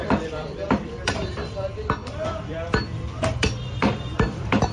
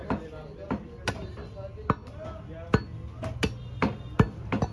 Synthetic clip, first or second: first